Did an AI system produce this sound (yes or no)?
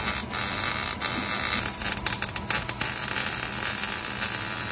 no